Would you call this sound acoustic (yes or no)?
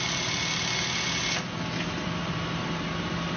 yes